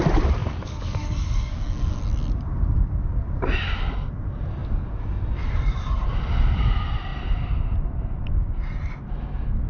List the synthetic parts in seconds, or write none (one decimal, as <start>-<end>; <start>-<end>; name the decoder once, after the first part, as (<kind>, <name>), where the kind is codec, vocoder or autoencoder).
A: 0.4-2.0 (codec, DAC)